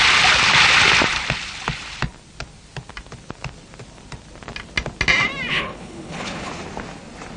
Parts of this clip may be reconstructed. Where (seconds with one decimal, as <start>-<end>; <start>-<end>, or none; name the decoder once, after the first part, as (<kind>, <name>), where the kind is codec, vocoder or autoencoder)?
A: 5.5-6.5 (codec, HILCodec)